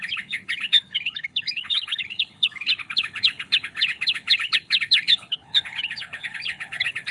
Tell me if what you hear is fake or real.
fake